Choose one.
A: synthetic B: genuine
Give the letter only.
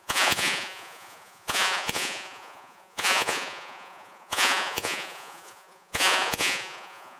A